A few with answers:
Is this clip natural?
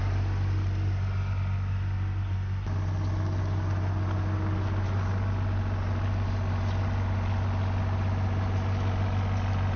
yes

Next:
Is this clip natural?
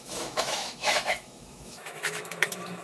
no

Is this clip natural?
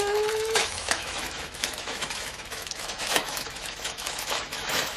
no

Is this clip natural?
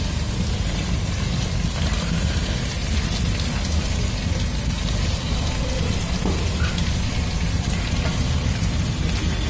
yes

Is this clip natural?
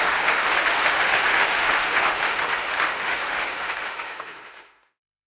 no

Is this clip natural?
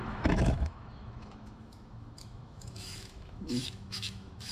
no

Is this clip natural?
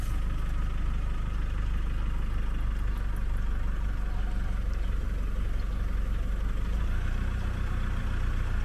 yes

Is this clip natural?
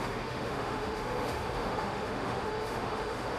no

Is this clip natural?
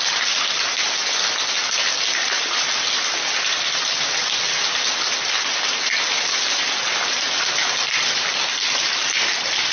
yes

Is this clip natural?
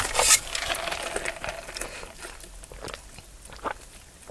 yes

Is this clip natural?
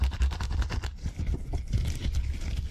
yes